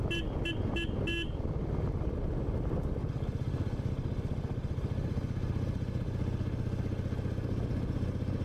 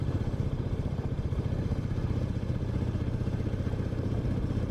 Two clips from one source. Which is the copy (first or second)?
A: second